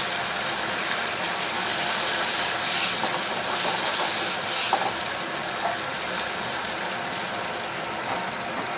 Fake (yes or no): no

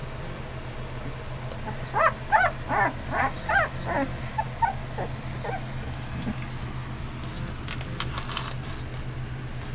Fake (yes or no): no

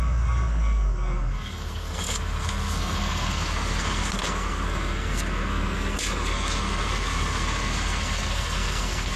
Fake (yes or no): yes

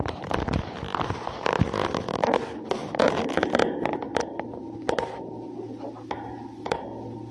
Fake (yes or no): no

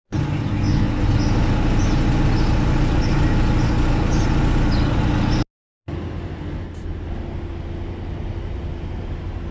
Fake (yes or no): no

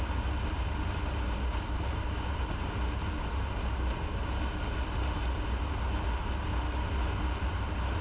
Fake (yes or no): no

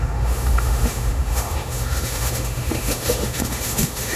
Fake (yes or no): yes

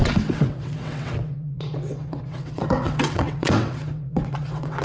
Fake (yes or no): yes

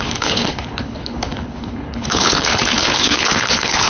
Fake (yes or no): yes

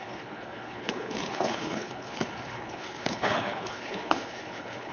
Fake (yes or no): yes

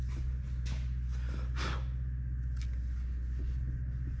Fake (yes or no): no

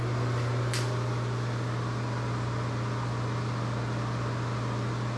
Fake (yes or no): no